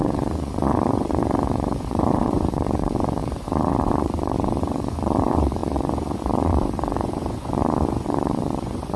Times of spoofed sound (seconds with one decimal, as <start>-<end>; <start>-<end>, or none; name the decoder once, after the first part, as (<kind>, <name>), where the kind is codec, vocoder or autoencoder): 0.0-9.0 (vocoder, Vocos)